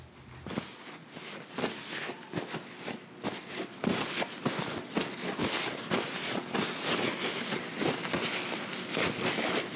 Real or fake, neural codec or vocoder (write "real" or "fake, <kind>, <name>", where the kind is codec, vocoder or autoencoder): real